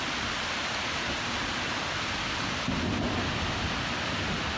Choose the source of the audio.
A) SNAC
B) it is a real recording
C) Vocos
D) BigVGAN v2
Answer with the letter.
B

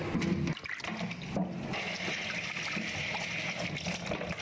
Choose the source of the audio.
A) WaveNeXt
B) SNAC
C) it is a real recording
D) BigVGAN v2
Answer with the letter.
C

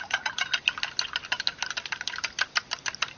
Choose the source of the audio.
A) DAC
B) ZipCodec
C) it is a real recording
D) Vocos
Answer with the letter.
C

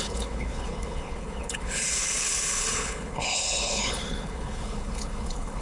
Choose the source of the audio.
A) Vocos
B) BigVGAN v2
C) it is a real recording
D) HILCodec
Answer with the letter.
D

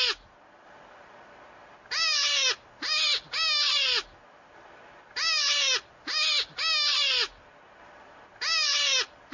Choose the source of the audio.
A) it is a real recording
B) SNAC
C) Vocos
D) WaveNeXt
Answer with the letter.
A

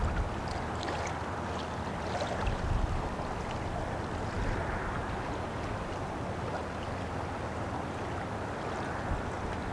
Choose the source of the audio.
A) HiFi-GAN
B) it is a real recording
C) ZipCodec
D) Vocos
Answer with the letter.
B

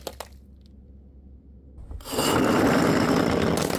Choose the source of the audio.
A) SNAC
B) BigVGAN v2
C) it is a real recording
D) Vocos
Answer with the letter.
C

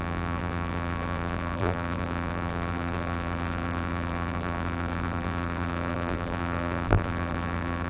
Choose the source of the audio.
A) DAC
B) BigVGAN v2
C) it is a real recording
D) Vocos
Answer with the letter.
B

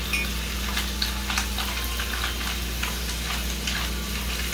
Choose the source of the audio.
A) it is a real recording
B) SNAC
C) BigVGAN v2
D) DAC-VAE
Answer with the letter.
A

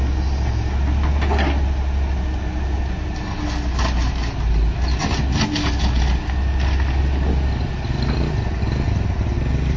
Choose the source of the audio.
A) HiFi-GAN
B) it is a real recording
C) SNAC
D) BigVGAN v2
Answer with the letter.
B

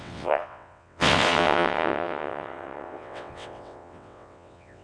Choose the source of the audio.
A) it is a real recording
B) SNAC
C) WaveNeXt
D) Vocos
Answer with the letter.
C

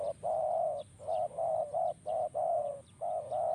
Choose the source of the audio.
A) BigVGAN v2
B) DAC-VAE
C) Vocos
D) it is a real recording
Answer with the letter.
D